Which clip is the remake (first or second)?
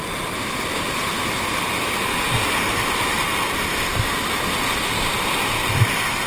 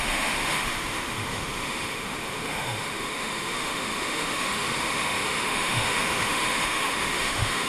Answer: second